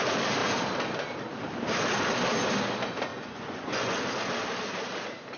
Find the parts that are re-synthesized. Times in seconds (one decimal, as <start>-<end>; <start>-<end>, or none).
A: 3.1-4.0